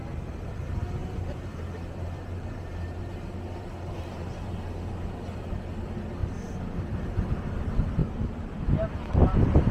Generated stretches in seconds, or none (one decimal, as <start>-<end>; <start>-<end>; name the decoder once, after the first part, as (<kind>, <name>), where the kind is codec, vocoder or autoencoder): 1.0-4.5 (vocoder, BigVGAN v2); 6.2-7.4; 8.0-8.6